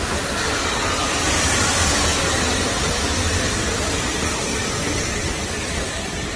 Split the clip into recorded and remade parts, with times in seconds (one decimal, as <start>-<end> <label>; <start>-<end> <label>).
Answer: 0.0-6.4 recorded